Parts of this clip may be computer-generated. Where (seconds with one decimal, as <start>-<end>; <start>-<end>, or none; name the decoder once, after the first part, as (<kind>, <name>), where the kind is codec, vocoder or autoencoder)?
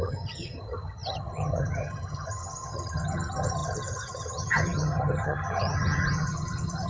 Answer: 0.0-6.9 (vocoder, HiFi-GAN)